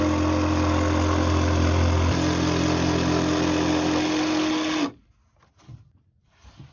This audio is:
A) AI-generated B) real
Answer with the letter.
B